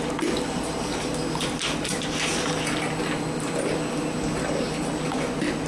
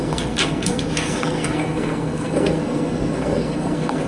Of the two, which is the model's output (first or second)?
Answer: second